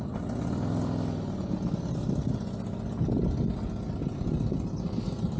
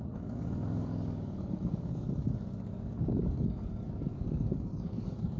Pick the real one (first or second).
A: first